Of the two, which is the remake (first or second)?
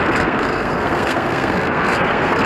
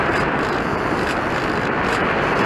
first